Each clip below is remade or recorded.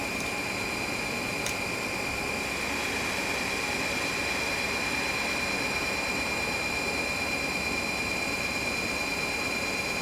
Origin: recorded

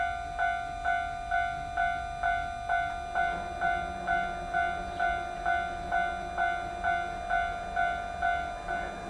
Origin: recorded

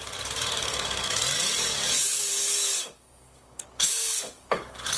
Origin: remade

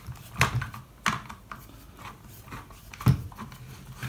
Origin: recorded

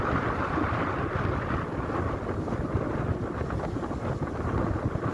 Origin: recorded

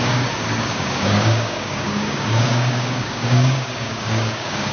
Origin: remade